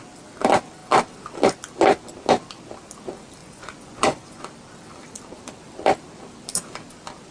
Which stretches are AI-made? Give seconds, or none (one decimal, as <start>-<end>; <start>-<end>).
3.4-4.4